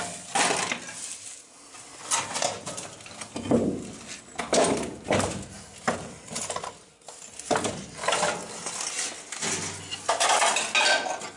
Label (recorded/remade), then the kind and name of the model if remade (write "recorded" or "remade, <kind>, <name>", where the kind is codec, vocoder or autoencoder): recorded